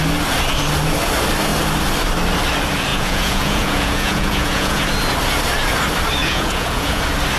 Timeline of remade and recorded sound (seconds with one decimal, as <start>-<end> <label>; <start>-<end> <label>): 0.0-2.9 recorded; 2.9-4.8 remade; 4.8-6.2 recorded; 6.2-7.0 remade; 7.0-7.4 recorded